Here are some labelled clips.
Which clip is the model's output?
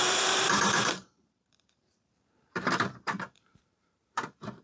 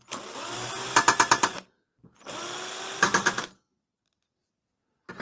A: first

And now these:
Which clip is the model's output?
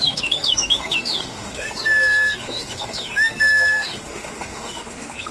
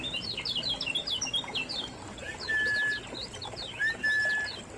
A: first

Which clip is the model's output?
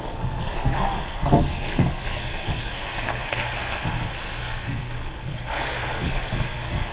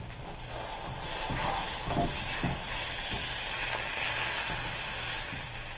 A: first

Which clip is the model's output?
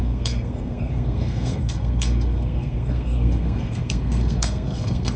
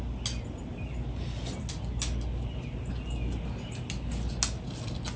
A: first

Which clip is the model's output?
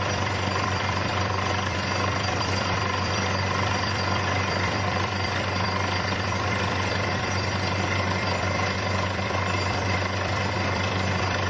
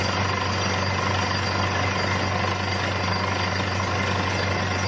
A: first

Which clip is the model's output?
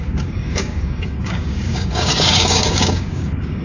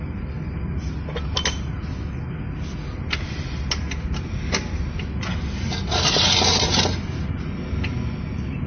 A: first